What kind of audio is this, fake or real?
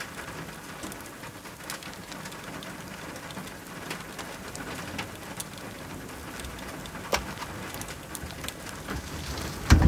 real